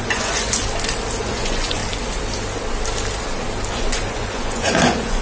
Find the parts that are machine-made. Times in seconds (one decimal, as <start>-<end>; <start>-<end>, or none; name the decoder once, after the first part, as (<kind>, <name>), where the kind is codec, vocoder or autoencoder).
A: 0.0-0.6 (vocoder, Vocos); 1.2-1.8; 3.7-5.2